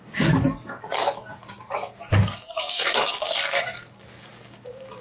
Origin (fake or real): fake